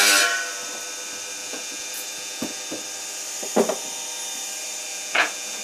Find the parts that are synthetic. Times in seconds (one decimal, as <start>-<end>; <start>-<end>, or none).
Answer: 1.4-2.7; 4.9-5.6